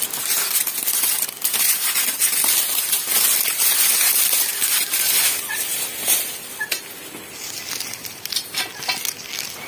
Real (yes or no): yes